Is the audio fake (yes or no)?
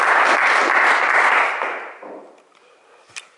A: no